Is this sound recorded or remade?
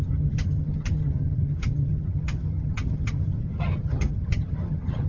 remade